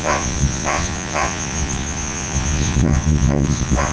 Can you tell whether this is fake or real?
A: fake